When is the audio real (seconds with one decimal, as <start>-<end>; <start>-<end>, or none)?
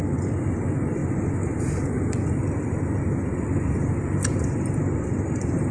0.0-5.7